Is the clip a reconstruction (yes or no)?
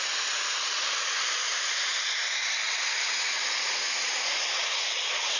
yes